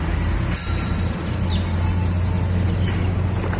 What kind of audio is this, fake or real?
real